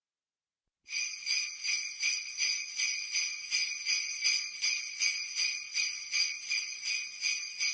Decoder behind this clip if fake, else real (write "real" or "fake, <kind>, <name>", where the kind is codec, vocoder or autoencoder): real